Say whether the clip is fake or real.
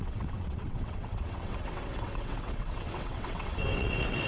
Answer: fake